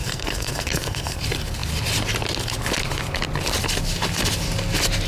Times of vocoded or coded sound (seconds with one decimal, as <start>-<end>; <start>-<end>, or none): 0.0-1.2

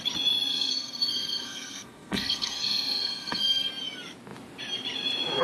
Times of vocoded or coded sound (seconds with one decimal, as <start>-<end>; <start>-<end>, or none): 0.5-3.7

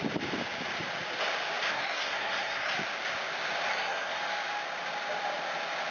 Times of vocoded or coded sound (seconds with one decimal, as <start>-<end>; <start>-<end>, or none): 1.7-2.7; 3.7-4.2

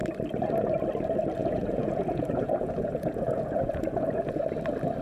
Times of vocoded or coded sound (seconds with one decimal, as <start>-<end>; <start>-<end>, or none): 1.4-4.4

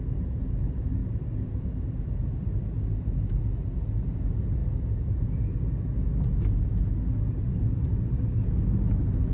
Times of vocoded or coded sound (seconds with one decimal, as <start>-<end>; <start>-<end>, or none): 1.0-2.6